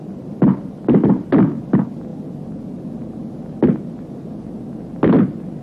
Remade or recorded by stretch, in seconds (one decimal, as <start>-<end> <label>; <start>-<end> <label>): 0.0-5.6 recorded